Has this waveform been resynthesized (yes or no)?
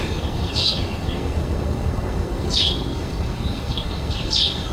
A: yes